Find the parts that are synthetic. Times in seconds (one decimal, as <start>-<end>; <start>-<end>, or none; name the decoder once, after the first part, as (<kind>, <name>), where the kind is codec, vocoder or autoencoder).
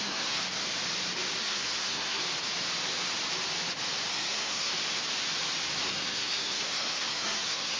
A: 0.0-0.4 (codec, SNAC); 1.4-2.2; 4.1-4.7; 5.9-7.8